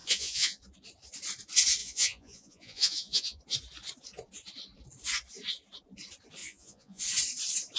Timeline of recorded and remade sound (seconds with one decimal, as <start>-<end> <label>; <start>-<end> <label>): 0.0-0.6 remade; 0.6-1.8 recorded; 1.8-3.4 remade; 3.4-6.4 recorded; 6.4-7.0 remade; 7.0-7.8 recorded